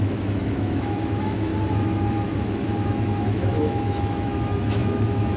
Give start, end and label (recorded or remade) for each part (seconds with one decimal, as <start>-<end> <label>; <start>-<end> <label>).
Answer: 0.0-1.5 remade; 1.5-2.4 recorded; 2.4-5.4 remade